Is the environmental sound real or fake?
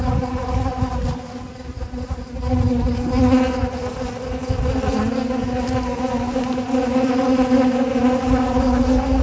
real